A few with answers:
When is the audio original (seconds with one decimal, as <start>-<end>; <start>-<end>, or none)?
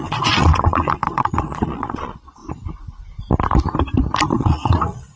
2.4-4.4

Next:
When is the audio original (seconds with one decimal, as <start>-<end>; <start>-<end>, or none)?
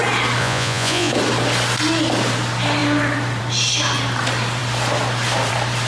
0.0-0.4; 1.1-5.9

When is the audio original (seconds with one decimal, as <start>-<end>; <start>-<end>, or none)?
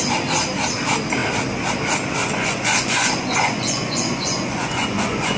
0.0-2.2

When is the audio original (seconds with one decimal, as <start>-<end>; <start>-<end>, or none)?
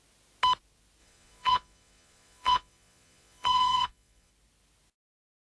0.0-1.0; 4.3-5.5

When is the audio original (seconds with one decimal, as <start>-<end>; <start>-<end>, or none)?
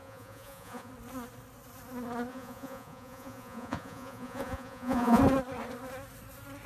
0.9-2.3; 5.2-6.7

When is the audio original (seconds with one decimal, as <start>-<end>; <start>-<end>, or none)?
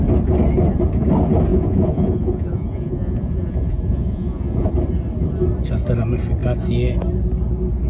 0.0-1.5; 4.7-7.9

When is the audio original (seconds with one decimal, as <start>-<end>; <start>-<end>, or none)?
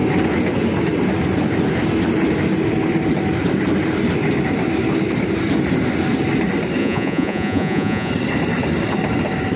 0.0-6.8; 8.1-9.6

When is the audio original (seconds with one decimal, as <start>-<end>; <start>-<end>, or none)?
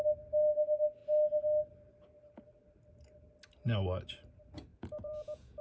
0.0-4.7